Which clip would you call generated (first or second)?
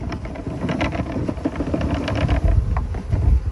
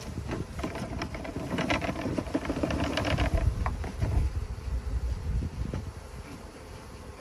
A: second